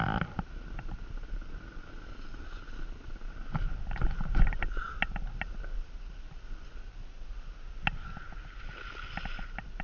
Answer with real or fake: real